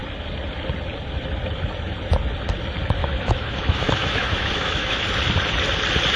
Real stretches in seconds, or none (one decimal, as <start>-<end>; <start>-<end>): 0.0-3.0; 5.0-6.2